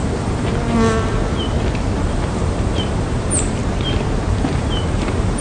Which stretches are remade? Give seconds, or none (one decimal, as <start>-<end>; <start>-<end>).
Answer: 0.0-0.5; 2.0-3.6; 4.3-5.4